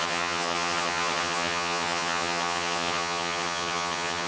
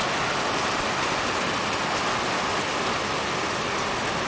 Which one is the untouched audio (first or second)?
second